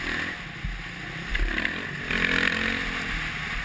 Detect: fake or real real